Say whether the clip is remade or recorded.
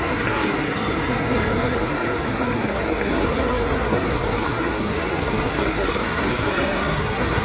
remade